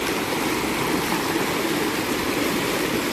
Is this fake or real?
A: real